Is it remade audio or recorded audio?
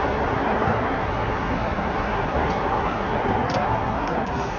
remade